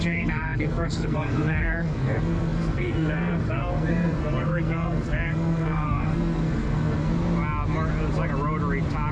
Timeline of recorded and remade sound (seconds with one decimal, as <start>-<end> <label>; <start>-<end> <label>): 0.0-7.1 remade; 7.1-9.1 recorded